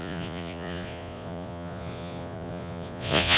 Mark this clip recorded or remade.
remade